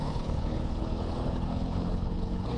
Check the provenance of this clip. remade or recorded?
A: remade